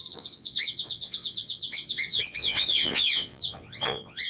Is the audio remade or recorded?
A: remade